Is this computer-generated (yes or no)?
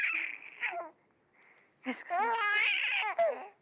no